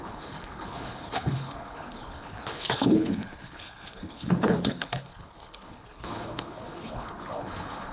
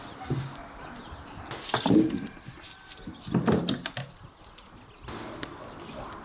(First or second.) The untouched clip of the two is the second